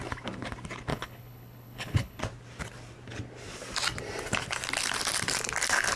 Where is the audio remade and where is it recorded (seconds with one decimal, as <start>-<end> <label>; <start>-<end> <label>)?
0.0-0.9 recorded; 0.9-2.2 remade; 2.2-6.0 recorded